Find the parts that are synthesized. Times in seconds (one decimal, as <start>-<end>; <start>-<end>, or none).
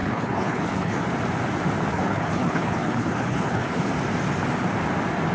0.0-1.0; 1.9-3.9